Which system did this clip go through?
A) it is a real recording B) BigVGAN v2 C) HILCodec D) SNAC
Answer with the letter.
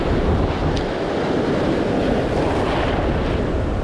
A